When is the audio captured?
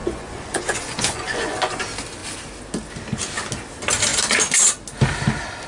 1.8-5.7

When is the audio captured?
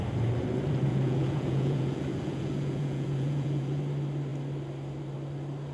0.0-0.9; 3.8-5.7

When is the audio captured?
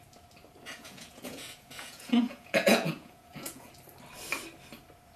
0.0-0.6; 3.7-5.2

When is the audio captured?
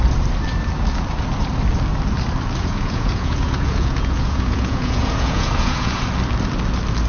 0.0-2.6; 6.0-7.1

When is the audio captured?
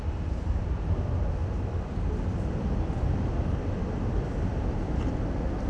0.0-5.7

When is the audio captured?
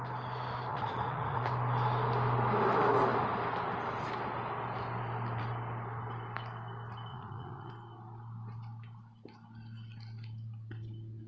0.0-0.7; 1.5-7.1; 7.7-11.3